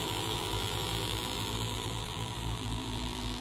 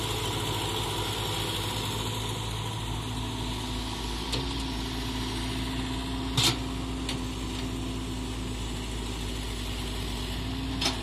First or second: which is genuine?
second